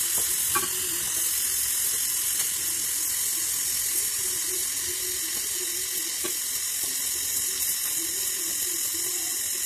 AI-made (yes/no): no